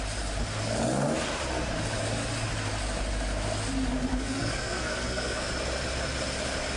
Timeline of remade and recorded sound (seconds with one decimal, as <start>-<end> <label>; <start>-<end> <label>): 0.0-4.1 recorded; 4.1-5.5 remade; 5.5-6.8 recorded